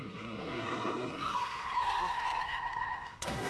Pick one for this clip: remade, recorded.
remade